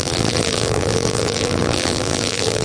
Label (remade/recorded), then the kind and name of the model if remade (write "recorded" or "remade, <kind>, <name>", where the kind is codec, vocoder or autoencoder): remade, vocoder, BigVGAN v2